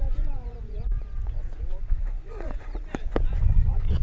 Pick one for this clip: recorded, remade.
remade